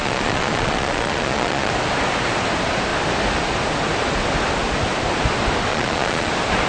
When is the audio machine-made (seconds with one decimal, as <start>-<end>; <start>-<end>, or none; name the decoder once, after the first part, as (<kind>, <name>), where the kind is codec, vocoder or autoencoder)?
0.0-1.7 (vocoder, Vocos); 5.7-6.3